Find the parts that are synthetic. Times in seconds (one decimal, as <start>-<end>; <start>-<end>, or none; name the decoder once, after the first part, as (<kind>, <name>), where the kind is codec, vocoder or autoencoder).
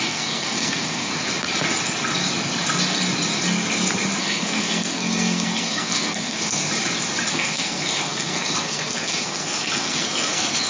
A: 0.0-1.1 (codec, SNAC); 4.2-6.6; 7.3-10.7